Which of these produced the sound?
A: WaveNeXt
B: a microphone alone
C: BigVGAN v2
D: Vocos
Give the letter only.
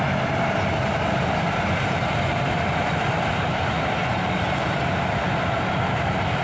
C